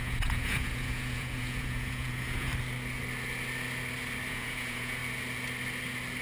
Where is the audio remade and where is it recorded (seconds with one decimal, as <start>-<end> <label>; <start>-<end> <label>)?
0.0-2.5 remade; 2.5-4.3 recorded; 4.3-5.0 remade; 5.0-6.2 recorded